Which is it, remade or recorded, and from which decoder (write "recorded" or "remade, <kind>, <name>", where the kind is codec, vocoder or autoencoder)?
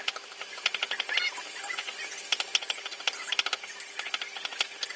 recorded